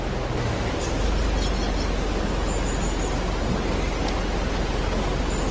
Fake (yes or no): no